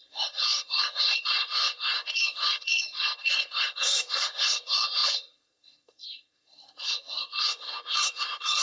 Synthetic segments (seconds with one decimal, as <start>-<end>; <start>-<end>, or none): 0.0-8.6